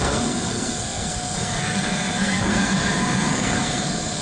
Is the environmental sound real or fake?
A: fake